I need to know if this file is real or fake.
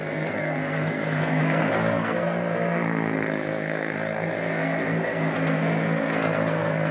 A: fake